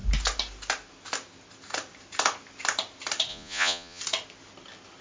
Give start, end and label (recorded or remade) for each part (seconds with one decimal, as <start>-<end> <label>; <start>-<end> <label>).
0.0-3.3 recorded; 3.3-4.0 remade; 4.0-5.0 recorded